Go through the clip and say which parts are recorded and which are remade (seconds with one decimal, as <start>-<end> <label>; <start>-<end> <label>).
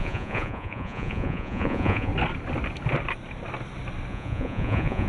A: 0.0-2.1 remade; 2.1-4.1 recorded; 4.1-5.1 remade